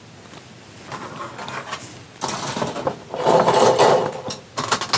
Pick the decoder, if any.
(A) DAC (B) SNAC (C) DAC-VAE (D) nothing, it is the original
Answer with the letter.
D